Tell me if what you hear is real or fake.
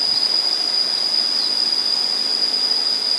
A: real